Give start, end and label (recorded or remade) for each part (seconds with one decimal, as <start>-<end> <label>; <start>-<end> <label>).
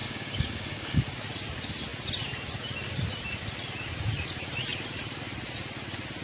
0.0-1.0 remade; 1.0-6.2 recorded